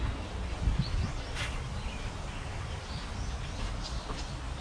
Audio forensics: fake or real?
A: real